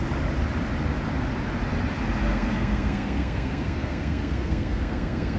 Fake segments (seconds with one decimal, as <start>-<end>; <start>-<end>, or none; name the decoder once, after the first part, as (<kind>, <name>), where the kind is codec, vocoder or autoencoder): 2.3-5.4 (codec, SNAC)